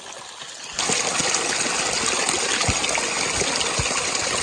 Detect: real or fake real